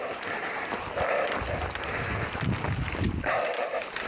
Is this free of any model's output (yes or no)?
yes